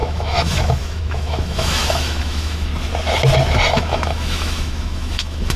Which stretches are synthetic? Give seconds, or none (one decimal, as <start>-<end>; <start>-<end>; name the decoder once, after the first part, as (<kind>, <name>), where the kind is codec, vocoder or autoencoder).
0.0-2.7 (autoencoder, DAC-VAE); 3.7-5.6